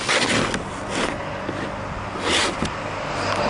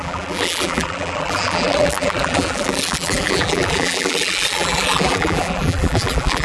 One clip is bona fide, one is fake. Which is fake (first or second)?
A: second